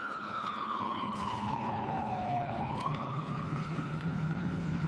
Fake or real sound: fake